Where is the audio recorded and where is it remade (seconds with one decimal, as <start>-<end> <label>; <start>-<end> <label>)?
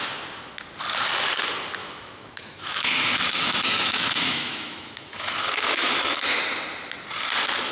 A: 0.0-1.8 recorded; 1.8-6.4 remade; 6.4-7.7 recorded